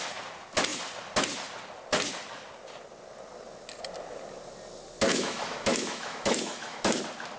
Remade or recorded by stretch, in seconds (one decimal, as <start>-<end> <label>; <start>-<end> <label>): 0.0-5.1 recorded; 5.1-7.0 remade; 7.0-7.4 recorded